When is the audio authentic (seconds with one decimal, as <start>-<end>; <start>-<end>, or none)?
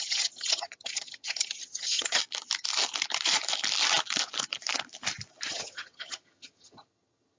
2.2-5.5